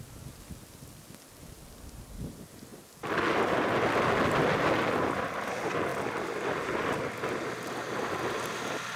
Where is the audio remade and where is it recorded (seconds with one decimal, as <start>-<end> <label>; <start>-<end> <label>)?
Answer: 0.0-9.0 recorded